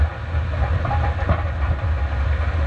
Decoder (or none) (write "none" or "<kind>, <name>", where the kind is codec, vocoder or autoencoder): none